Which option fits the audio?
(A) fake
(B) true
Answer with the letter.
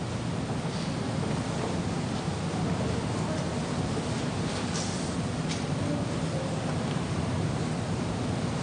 B